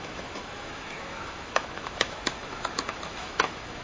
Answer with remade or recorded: remade